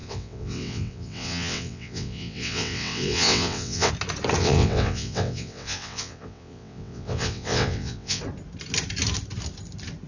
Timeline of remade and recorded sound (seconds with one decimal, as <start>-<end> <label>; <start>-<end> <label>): 0.0-3.9 remade; 3.9-4.4 recorded; 4.4-8.2 remade; 8.2-10.1 recorded